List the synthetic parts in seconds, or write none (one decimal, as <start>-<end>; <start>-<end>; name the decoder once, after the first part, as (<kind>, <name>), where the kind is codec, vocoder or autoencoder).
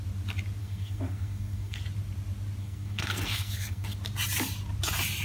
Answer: 0.6-1.8 (codec, SNAC); 2.6-4.0